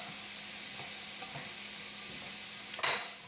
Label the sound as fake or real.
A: real